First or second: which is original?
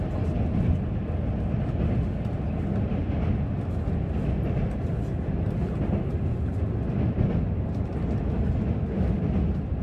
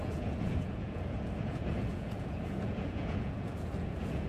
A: first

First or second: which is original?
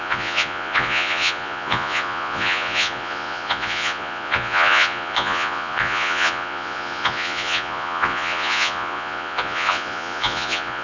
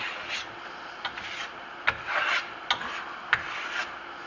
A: second